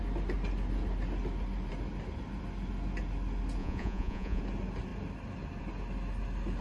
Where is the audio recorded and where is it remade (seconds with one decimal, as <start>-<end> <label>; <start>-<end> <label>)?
0.0-3.6 recorded; 3.6-4.4 remade; 4.4-6.6 recorded